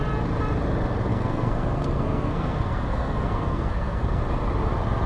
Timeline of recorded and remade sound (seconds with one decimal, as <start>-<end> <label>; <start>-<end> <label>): 0.0-1.1 recorded; 1.1-4.2 remade; 4.2-5.1 recorded